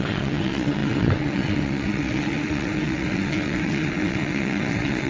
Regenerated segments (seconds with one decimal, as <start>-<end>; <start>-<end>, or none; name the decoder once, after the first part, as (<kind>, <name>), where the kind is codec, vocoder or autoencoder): 0.0-5.1 (vocoder, WaveNeXt)